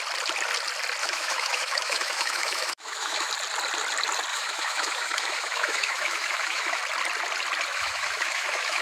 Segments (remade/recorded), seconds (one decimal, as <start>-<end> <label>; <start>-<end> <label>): 0.0-1.0 recorded; 1.0-3.3 remade; 3.3-4.3 recorded; 4.3-6.8 remade; 6.8-7.7 recorded; 7.7-8.8 remade